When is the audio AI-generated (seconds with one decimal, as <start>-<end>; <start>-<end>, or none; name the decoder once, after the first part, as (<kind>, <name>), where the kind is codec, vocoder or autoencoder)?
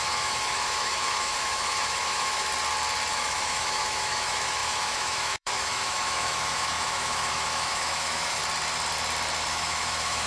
0.0-2.5 (autoencoder, DAC-VAE); 3.1-8.4; 9.5-10.3